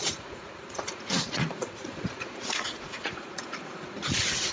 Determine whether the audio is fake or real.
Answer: fake